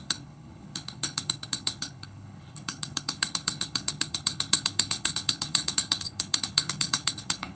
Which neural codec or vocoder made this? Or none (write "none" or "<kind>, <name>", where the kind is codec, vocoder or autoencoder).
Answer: codec, HILCodec